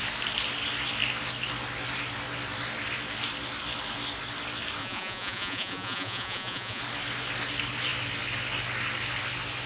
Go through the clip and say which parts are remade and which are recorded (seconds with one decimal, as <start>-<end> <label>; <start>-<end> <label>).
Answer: 0.0-4.8 recorded; 4.8-6.8 remade; 6.8-9.7 recorded